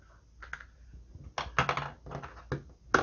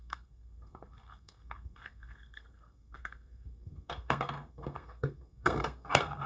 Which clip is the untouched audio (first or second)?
first